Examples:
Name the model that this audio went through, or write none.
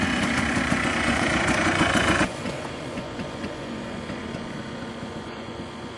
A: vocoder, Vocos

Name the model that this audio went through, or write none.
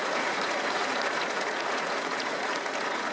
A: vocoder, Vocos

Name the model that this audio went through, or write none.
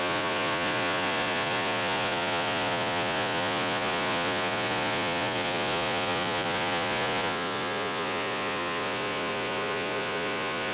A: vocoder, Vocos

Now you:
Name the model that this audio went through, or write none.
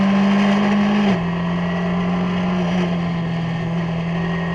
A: none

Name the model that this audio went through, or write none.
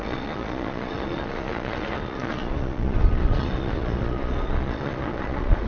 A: vocoder, Vocos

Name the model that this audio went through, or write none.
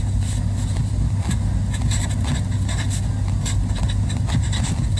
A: none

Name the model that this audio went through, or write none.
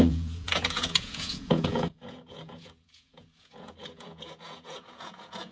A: vocoder, Vocos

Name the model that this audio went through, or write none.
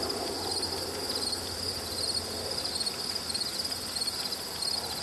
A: none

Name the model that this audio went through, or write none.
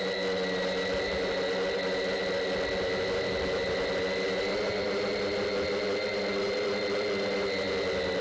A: none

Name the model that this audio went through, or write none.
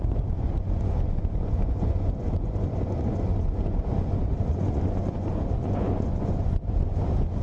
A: vocoder, Vocos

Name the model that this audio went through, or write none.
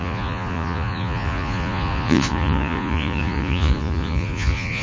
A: vocoder, Vocos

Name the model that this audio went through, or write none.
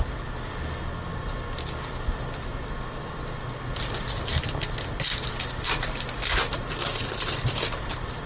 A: none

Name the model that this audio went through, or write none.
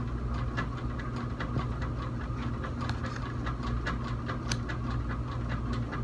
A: none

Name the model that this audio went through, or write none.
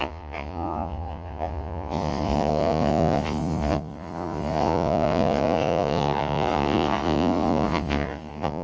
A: vocoder, Vocos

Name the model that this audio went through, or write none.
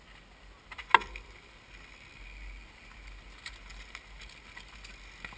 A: none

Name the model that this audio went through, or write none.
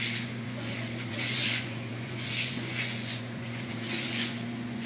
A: vocoder, Vocos